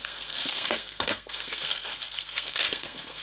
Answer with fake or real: fake